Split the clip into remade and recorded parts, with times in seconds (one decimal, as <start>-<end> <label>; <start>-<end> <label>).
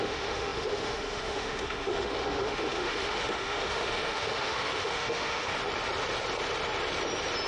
0.0-5.5 remade; 5.5-7.5 recorded